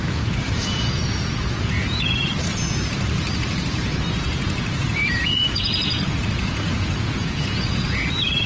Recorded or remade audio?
remade